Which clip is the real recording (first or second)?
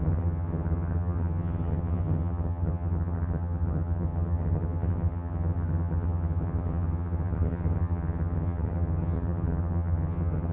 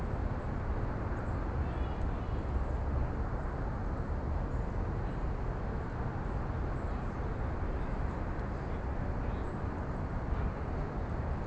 second